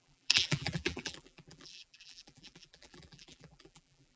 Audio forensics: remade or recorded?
remade